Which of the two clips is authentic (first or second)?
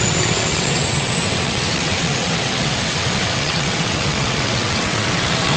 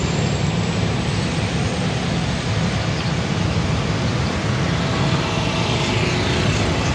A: second